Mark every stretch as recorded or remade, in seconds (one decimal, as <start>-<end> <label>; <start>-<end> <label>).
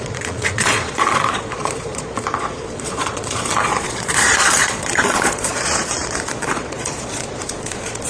0.0-8.1 remade